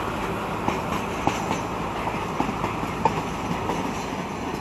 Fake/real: real